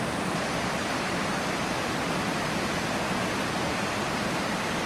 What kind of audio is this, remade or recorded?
remade